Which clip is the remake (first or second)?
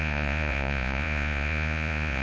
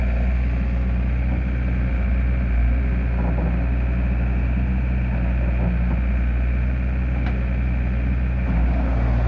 first